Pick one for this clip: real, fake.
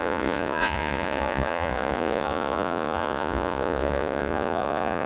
fake